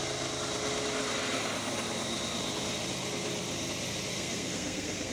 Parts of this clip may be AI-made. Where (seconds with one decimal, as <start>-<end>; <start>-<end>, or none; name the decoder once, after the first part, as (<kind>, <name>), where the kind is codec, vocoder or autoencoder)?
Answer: 4.1-5.1 (codec, SNAC)